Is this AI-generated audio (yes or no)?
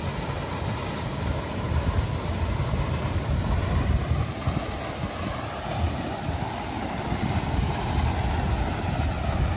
no